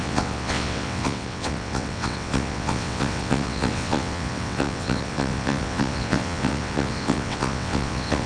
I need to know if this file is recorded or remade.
remade